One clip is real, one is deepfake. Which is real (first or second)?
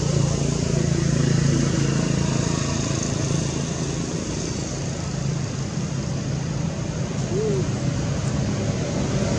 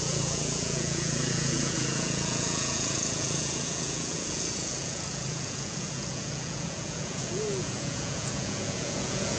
first